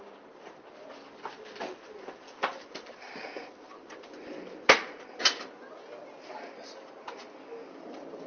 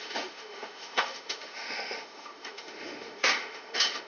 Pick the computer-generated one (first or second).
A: second